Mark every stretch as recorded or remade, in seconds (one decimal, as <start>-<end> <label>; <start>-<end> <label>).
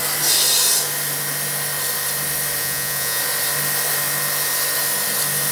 0.0-2.6 recorded; 2.6-3.2 remade; 3.2-5.5 recorded